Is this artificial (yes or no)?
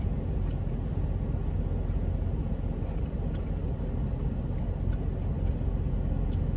no